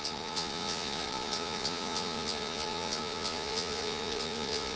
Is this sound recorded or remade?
remade